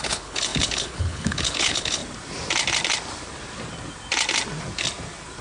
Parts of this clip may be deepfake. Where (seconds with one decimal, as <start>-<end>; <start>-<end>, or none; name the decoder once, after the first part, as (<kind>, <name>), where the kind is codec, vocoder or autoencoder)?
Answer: 0.0-2.0 (codec, HILCodec)